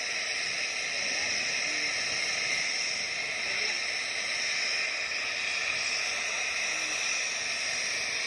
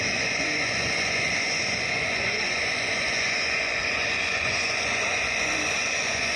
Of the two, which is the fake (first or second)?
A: second